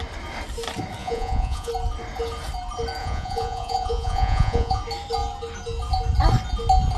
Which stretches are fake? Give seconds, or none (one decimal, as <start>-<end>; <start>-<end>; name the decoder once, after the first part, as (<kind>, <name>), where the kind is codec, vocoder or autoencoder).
1.0-1.7 (vocoder, Vocos); 3.0-4.8